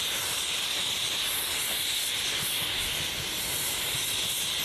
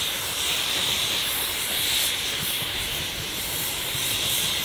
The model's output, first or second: second